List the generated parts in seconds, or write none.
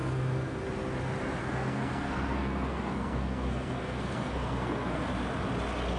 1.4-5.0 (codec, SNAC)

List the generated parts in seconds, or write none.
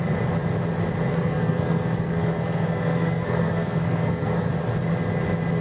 1.1-4.5 (codec, SNAC)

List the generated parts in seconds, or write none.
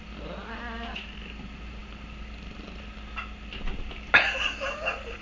none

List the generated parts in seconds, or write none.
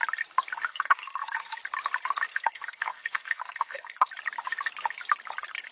0.7-1.6 (codec, SNAC); 2.3-4.1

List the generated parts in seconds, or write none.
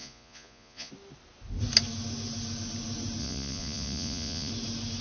0.0-0.9 (vocoder, Vocos); 3.2-4.5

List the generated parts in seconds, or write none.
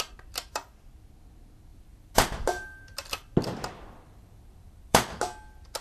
1.7-5.2 (vocoder, BigVGAN v2)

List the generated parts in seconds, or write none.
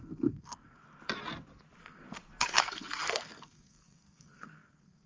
0.0-0.8 (codec, SNAC); 1.8-5.1